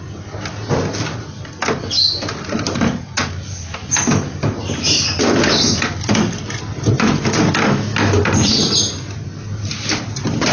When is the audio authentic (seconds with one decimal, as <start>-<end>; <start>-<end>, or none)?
0.0-10.5